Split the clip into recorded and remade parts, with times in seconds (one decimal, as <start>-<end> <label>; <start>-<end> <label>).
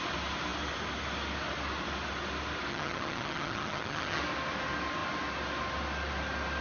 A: 0.0-2.7 recorded; 2.7-4.2 remade; 4.2-6.6 recorded